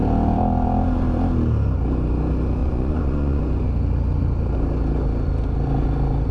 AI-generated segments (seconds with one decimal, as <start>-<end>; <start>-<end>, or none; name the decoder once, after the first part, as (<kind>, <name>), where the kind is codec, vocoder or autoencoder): 2.6-3.4 (vocoder, Vocos)